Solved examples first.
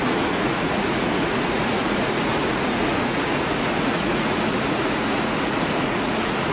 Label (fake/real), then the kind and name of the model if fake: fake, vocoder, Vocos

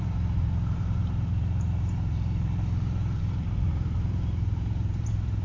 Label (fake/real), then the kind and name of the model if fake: fake, vocoder, BigVGAN v2